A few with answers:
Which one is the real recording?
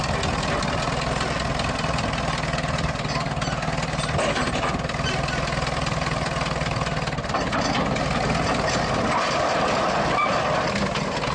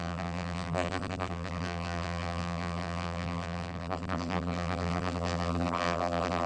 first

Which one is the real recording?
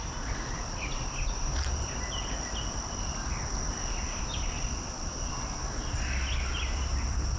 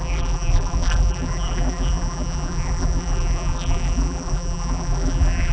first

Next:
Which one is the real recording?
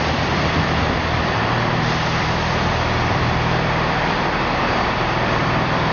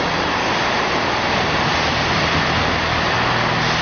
second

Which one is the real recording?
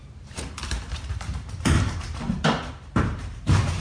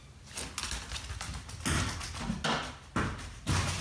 second